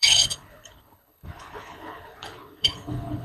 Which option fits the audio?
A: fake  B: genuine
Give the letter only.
A